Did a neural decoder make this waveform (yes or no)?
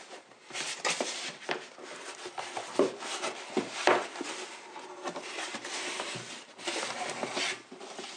no